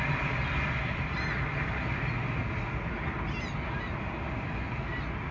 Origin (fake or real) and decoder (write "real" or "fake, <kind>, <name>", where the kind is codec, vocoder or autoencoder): real